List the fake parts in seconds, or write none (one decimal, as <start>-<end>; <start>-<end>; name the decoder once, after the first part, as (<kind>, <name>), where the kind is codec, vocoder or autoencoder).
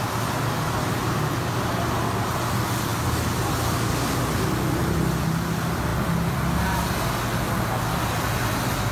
none